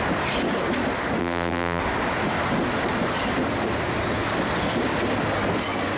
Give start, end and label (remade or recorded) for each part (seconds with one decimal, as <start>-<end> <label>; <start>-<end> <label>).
0.0-1.2 recorded; 1.2-1.8 remade; 1.8-6.0 recorded